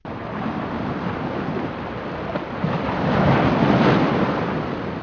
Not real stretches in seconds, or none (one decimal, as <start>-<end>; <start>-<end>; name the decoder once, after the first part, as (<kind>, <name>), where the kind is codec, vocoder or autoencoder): none